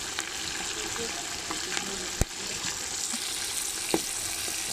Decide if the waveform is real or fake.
real